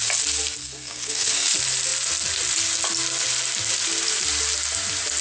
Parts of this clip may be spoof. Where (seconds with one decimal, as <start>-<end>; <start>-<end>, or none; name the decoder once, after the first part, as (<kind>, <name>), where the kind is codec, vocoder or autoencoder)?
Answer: 0.6-1.5 (codec, SNAC)